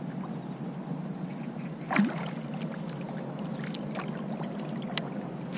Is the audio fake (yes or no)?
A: no